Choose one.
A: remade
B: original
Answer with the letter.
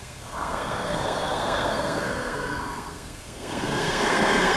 A